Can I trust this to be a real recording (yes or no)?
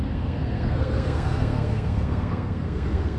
no